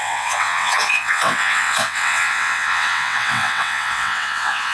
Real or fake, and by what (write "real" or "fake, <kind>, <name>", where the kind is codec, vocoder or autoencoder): fake, vocoder, WaveNeXt